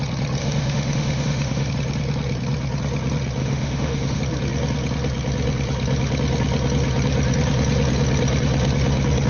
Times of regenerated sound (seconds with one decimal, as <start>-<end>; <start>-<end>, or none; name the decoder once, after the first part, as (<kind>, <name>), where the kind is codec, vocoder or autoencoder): 0.4-1.7 (autoencoder, DAC-VAE); 3.4-4.2